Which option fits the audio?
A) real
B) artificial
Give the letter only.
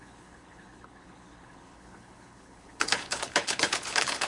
B